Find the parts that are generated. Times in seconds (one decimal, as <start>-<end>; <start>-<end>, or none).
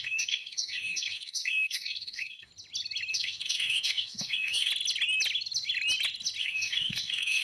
0.0-2.5; 3.1-4.7; 6.4-7.4